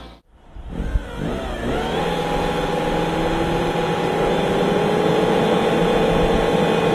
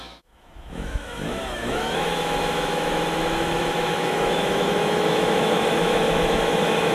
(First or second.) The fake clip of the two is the second